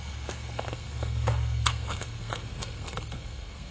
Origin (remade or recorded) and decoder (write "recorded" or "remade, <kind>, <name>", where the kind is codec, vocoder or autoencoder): remade, codec, SNAC